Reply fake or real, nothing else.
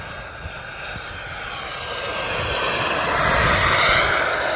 real